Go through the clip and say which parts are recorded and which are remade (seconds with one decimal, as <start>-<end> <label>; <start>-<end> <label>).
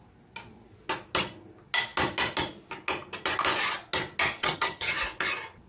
0.0-4.4 recorded; 4.4-4.9 remade; 4.9-5.7 recorded